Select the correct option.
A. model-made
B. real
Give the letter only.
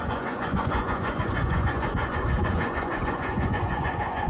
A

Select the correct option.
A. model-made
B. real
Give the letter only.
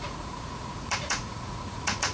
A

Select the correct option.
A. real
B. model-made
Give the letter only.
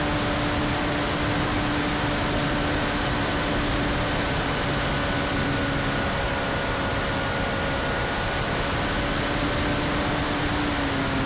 A